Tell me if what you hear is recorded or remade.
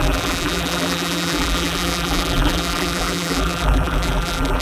remade